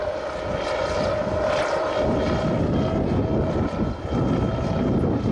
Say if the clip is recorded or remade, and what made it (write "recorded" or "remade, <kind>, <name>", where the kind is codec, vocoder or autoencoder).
recorded